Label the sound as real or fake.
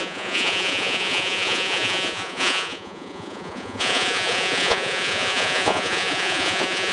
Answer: fake